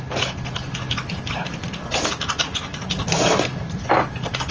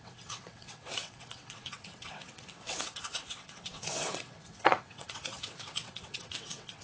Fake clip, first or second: second